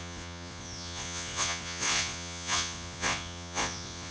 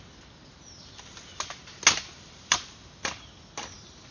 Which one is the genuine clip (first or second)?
second